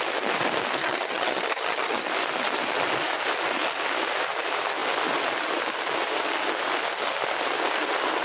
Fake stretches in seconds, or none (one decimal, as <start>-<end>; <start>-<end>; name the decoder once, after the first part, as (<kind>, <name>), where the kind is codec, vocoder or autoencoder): 0.8-2.0 (vocoder, HiFi-GAN)